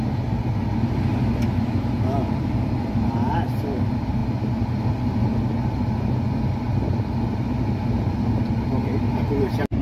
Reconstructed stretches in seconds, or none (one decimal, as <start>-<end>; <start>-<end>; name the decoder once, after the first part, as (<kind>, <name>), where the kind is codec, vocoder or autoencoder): none